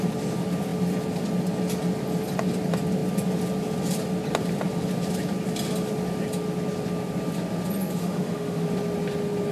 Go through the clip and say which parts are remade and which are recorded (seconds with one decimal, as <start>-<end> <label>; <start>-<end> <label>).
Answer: 0.0-8.0 recorded; 8.0-8.6 remade; 8.6-9.5 recorded